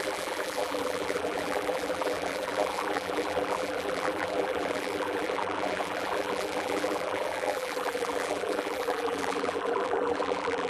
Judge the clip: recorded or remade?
remade